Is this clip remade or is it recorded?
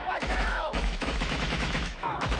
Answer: remade